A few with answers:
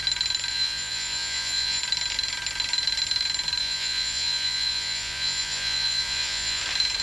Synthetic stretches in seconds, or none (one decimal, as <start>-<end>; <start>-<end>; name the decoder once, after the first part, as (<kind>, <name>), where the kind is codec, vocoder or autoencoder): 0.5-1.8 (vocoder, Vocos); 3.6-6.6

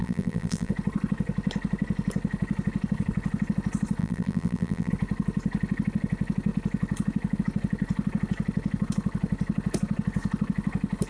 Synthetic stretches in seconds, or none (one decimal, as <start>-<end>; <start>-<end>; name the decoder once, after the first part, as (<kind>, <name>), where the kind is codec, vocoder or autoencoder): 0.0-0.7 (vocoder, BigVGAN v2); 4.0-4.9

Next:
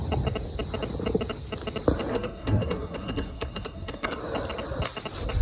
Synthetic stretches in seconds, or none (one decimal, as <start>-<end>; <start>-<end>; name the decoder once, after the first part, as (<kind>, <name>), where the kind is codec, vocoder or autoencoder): 2.1-4.2 (codec, SNAC)

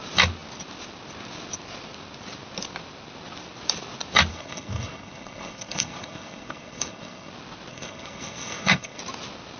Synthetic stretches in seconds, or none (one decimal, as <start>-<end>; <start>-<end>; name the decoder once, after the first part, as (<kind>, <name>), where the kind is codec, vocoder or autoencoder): 4.3-7.3 (codec, SNAC); 7.7-9.0

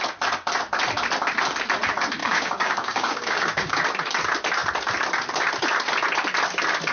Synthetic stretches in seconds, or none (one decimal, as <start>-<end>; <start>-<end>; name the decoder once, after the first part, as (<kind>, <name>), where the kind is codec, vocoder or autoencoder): 2.2-3.8 (codec, DAC)

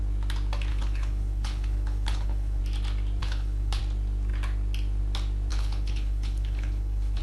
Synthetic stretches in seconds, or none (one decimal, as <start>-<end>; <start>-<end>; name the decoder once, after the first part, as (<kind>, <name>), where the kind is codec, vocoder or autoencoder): 0.7-2.6 (codec, HILCodec); 3.2-3.8; 5.5-7.2

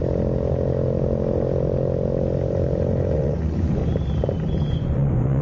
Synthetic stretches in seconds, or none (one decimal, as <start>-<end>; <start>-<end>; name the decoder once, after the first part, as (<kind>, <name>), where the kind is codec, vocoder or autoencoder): 3.1-3.8 (vocoder, Vocos); 4.7-5.4